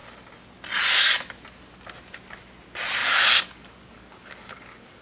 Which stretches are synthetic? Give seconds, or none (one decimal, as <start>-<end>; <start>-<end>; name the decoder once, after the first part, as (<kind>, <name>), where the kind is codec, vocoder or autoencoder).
3.0-5.0 (codec, DAC)